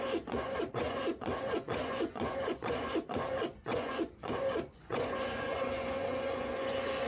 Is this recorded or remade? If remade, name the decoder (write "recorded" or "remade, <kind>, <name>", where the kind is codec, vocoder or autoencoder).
remade, vocoder, Vocos